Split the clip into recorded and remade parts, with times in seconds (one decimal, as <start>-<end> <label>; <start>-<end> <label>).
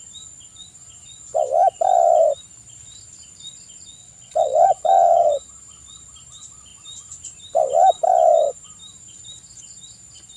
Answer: 0.0-4.0 recorded; 4.0-5.3 remade; 5.3-10.4 recorded